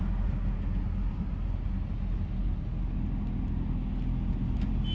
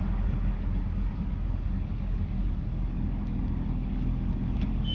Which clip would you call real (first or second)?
first